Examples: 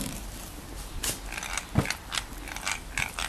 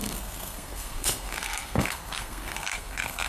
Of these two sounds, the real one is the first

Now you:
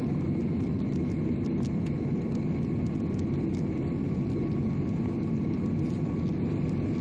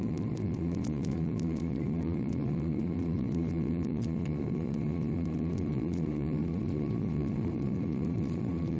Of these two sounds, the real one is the first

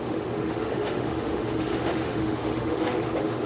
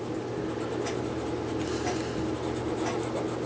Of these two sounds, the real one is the second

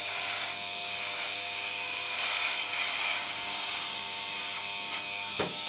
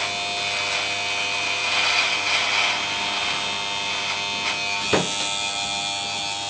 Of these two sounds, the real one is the second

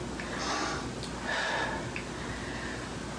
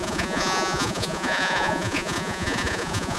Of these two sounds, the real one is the first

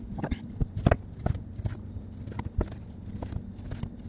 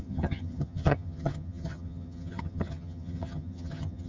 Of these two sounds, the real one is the first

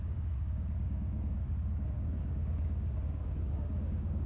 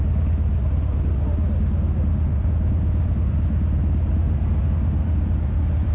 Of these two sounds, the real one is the second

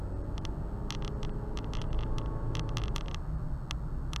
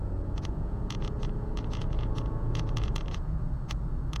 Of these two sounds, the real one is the first